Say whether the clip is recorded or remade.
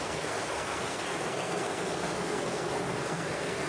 remade